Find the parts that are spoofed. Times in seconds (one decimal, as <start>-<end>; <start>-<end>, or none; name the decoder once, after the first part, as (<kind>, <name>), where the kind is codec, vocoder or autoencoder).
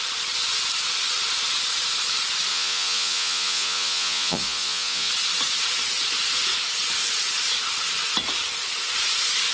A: 2.5-5.1 (vocoder, Vocos)